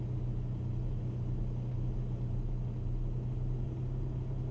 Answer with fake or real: real